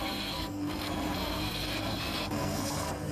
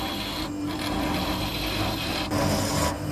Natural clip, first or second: second